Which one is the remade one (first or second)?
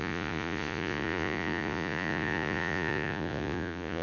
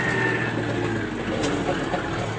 first